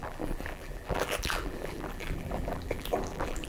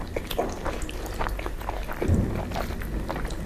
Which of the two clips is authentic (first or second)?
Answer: second